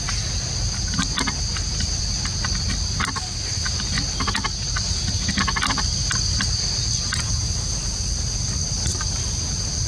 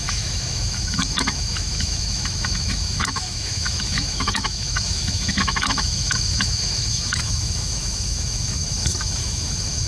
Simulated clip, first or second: second